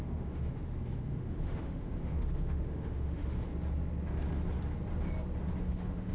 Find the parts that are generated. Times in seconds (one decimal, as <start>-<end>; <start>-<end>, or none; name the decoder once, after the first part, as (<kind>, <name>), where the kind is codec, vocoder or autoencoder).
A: 0.0-3.5 (autoencoder, DAC-VAE); 5.6-6.1